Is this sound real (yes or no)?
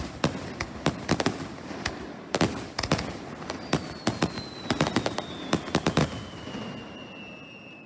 yes